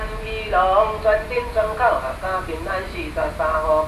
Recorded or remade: recorded